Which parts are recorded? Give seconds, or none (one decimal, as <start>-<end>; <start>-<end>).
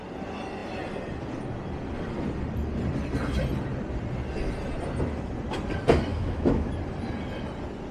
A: 0.0-6.1; 6.7-7.9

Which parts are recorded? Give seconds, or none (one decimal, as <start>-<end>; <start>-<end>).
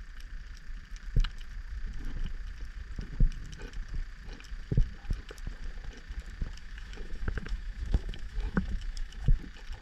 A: 0.0-6.6; 9.4-9.8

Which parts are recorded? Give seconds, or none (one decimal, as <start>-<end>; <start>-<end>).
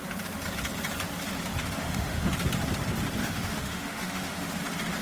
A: 0.0-1.6; 2.3-3.2; 4.5-5.0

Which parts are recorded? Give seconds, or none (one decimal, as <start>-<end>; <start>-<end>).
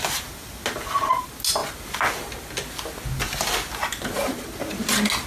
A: 0.0-5.3